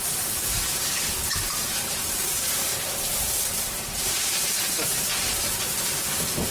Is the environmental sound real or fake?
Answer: fake